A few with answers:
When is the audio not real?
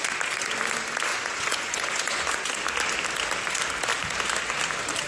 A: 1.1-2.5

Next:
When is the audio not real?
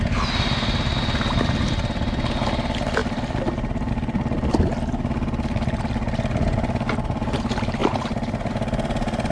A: none